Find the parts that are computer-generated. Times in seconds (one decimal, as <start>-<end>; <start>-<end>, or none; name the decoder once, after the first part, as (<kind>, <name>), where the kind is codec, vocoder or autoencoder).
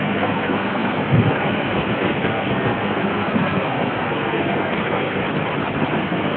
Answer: 0.0-5.2 (codec, SNAC); 5.9-6.4